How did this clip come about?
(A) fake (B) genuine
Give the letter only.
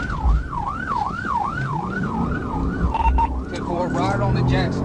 A